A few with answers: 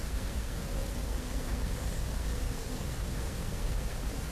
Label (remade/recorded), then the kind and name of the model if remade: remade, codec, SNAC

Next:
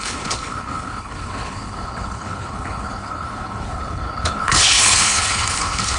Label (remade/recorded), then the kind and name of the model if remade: remade, codec, HILCodec